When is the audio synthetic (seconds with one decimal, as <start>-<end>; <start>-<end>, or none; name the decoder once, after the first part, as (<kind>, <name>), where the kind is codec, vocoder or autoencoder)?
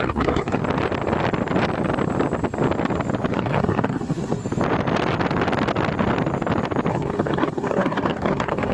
0.0-0.6 (codec, SNAC); 3.3-4.4; 6.9-8.7